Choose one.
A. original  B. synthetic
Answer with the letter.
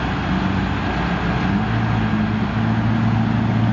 A